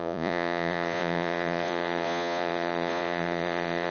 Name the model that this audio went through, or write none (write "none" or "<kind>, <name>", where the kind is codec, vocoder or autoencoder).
vocoder, Vocos